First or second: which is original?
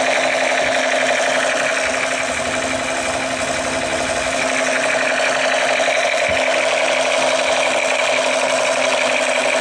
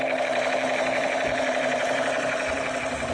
first